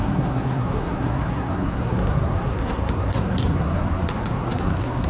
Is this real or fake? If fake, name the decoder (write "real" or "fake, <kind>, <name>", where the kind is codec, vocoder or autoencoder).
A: fake, codec, SNAC